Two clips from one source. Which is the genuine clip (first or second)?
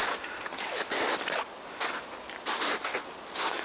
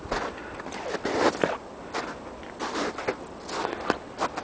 first